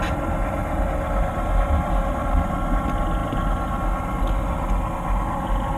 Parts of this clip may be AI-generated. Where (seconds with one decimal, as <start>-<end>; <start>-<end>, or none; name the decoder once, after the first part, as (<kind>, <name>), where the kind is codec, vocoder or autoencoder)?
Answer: none